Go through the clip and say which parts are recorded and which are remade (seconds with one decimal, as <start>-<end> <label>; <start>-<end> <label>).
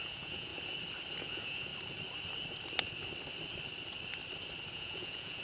0.0-0.5 remade; 0.5-1.2 recorded; 1.2-1.7 remade; 1.7-4.7 recorded; 4.7-5.4 remade